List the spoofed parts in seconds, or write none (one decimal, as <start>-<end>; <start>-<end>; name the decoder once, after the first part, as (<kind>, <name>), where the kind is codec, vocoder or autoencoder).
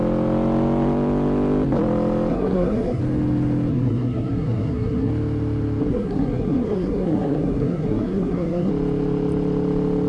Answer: 2.3-3.0 (codec, SNAC); 3.7-5.1; 5.9-8.7